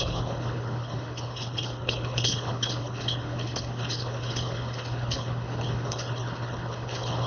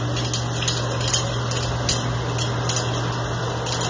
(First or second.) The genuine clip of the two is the second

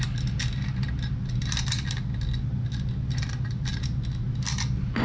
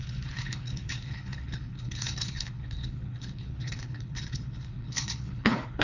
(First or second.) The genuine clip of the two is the first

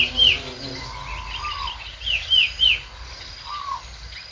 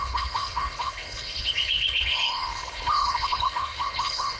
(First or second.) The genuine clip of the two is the first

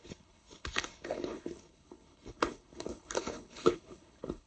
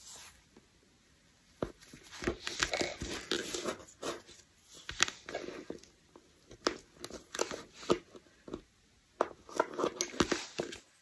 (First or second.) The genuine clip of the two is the second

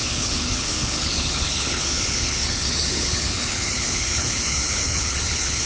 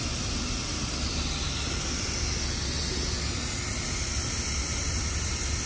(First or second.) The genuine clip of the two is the second